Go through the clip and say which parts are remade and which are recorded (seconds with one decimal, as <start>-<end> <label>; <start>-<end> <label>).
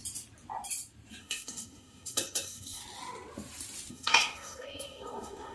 0.0-1.2 recorded; 1.2-2.8 remade; 2.8-3.9 recorded; 3.9-5.5 remade